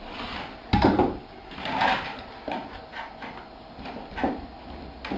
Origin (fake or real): real